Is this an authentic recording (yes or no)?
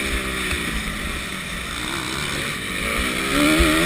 yes